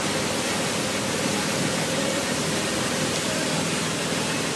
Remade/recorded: remade